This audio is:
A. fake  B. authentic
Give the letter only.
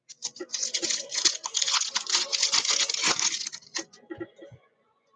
A